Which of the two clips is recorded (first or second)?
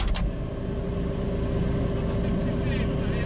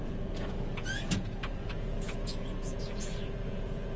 first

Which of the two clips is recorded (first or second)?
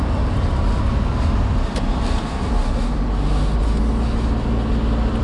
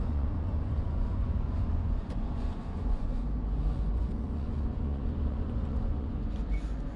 first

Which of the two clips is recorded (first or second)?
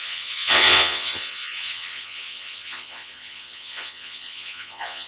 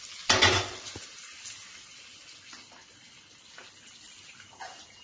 second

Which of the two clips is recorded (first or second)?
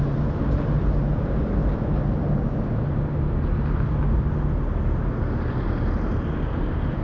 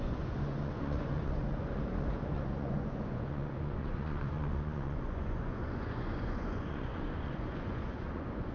first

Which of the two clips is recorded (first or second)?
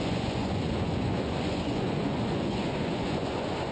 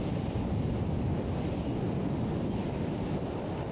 second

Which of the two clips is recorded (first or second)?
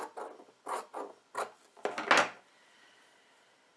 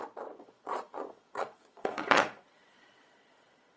first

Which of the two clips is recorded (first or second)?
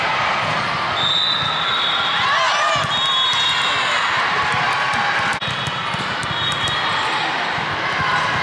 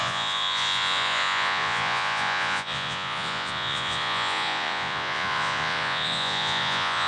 first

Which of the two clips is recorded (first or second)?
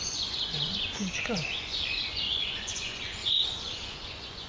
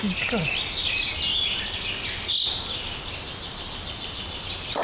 second